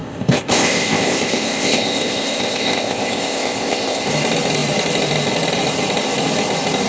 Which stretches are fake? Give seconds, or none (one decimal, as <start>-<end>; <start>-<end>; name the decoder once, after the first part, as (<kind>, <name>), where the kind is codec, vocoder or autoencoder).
0.0-4.1 (codec, ZipCodec)